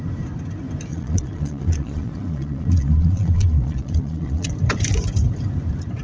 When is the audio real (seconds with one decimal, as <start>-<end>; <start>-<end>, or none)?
0.0-0.9; 4.5-6.0